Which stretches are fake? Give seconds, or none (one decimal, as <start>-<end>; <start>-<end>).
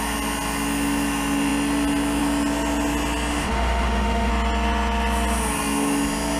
3.3-4.3